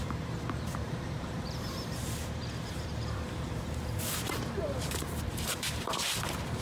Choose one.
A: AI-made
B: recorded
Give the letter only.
A